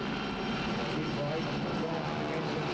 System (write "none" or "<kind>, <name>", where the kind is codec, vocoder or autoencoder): none